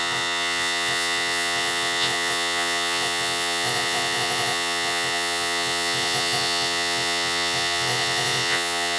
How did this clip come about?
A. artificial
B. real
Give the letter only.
A